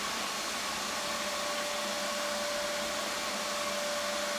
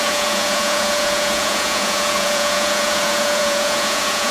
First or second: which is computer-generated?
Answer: second